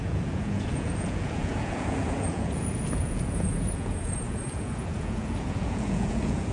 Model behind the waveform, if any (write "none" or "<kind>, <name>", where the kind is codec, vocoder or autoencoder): vocoder, Vocos